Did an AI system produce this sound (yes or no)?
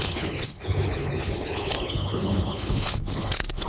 yes